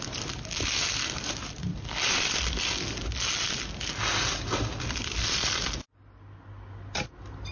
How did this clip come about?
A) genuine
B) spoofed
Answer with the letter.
A